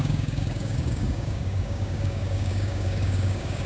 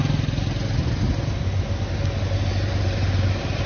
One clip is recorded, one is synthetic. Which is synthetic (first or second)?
first